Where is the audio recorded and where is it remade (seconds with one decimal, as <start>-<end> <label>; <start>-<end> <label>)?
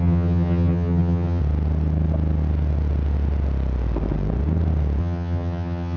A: 0.0-1.4 remade; 1.4-5.0 recorded; 5.0-6.0 remade